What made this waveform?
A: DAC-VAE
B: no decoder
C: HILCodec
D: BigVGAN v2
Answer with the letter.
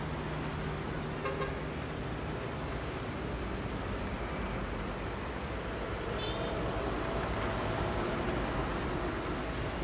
B